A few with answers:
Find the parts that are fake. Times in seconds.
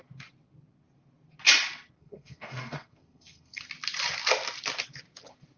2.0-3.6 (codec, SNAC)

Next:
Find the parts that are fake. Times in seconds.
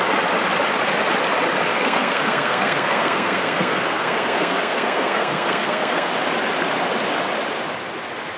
1.7-6.1 (codec, SNAC)